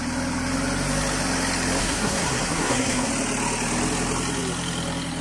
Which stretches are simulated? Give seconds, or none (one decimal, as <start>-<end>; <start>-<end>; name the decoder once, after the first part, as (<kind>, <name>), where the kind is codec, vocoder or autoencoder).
1.8-3.1 (codec, SNAC)